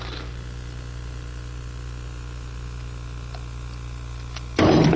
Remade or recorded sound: remade